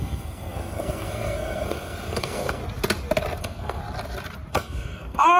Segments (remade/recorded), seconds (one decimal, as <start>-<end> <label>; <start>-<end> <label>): 0.0-2.6 remade; 2.6-3.4 recorded; 3.4-3.8 remade; 3.8-4.5 recorded; 4.5-5.4 remade

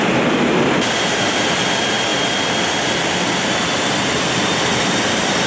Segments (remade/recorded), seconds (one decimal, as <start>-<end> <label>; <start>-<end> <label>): 0.0-5.5 recorded